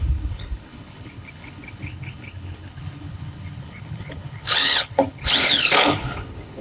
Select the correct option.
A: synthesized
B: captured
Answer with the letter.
A